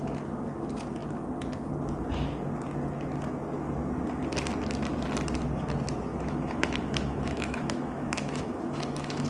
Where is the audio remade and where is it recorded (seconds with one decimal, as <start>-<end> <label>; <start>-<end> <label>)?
0.0-6.1 recorded; 6.1-9.3 remade